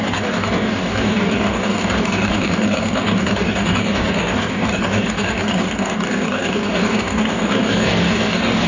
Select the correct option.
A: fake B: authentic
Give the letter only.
A